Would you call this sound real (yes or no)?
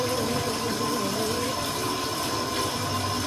no